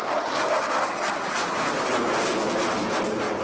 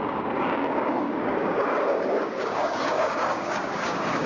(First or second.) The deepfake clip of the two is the second